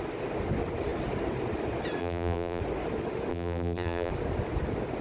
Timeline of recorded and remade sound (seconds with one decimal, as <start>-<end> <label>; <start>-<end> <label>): 0.0-2.0 recorded; 2.0-2.6 remade; 2.6-3.3 recorded; 3.3-4.1 remade; 4.1-5.0 recorded